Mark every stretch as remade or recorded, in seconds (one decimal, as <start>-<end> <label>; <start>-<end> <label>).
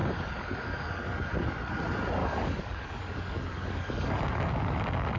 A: 0.0-1.7 remade; 1.7-2.2 recorded; 2.2-5.2 remade